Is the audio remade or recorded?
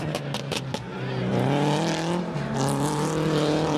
remade